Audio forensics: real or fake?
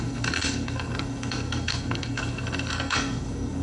fake